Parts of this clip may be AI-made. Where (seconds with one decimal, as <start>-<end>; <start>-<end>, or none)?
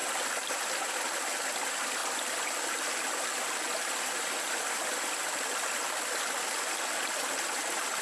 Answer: 2.0-5.9